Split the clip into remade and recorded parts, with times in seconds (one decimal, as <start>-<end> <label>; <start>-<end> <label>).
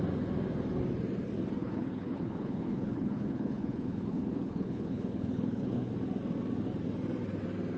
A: 0.0-1.6 recorded; 1.6-5.9 remade; 5.9-7.8 recorded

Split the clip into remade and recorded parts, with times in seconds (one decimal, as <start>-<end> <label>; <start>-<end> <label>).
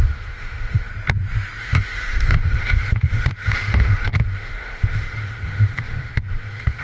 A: 0.0-0.9 remade; 0.9-1.6 recorded; 1.6-6.8 remade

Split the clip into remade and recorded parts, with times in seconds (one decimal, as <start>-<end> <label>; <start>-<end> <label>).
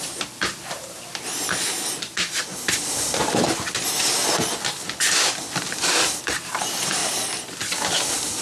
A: 0.0-2.5 remade; 2.5-6.2 recorded; 6.2-7.0 remade; 7.0-8.4 recorded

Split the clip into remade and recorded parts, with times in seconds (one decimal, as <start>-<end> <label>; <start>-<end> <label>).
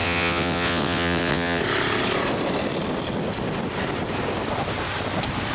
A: 0.0-1.6 remade; 1.6-5.5 recorded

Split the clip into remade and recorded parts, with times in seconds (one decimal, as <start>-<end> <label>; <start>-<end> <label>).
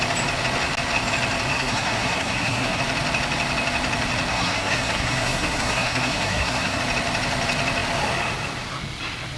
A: 0.0-1.5 recorded; 1.5-2.8 remade; 2.8-4.3 recorded; 4.3-6.8 remade; 6.8-9.4 recorded